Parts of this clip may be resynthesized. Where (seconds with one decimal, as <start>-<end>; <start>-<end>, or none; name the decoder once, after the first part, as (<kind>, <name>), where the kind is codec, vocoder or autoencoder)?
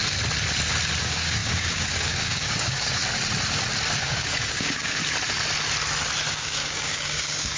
1.0-3.0 (codec, DAC); 4.0-5.0; 6.3-7.6